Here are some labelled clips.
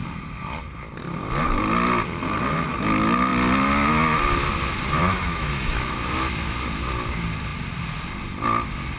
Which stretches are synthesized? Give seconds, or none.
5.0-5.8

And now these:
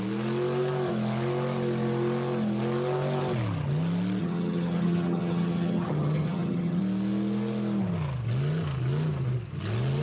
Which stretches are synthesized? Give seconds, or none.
4.2-6.8

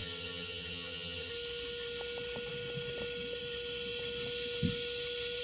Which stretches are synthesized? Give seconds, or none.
0.0-1.3

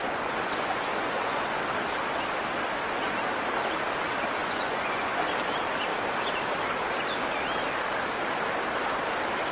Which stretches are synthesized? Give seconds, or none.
0.0-1.6; 4.4-5.3

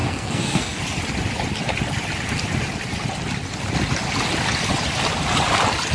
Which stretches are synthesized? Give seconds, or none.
0.0-0.8